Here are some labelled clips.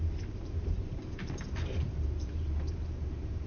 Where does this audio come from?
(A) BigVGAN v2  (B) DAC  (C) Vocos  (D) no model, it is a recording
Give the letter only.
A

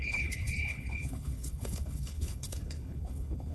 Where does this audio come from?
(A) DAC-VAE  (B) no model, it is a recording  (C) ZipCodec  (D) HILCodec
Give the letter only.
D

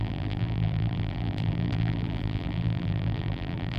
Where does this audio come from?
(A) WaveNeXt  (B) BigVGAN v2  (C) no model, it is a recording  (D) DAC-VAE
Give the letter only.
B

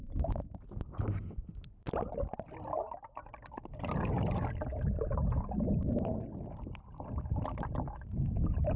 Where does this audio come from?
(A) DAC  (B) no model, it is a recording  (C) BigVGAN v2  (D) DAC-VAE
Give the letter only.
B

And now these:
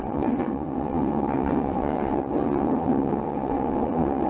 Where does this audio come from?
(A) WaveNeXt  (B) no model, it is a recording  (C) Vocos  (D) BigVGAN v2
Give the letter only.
A